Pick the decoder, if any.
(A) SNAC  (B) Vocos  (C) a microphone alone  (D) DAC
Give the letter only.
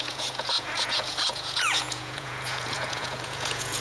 B